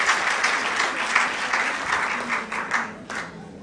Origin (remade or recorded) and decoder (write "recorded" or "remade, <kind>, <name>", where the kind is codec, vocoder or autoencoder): recorded